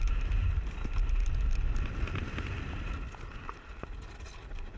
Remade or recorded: recorded